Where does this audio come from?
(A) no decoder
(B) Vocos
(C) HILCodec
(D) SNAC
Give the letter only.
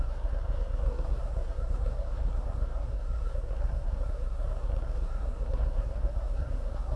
D